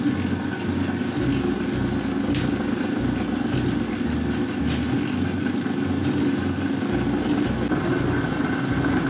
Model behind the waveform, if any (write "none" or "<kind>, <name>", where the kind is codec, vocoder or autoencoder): none